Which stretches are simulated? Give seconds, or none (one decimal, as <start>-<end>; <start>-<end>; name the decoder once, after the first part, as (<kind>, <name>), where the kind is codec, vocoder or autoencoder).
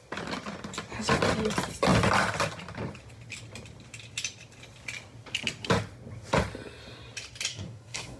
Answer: 7.5-8.2 (codec, SNAC)